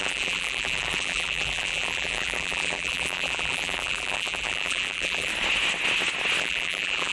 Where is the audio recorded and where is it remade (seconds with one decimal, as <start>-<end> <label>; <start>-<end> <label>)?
0.0-5.3 remade; 5.3-6.4 recorded; 6.4-7.1 remade